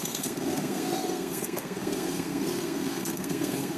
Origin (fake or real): fake